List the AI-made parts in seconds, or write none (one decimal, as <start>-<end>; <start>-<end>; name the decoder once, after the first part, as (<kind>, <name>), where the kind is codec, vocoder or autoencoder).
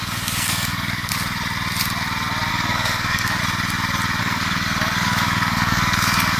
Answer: 0.0-1.1 (codec, SNAC); 2.5-3.4; 4.2-6.4